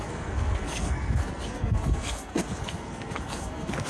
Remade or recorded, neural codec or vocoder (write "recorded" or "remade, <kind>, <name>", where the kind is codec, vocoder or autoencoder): remade, codec, SNAC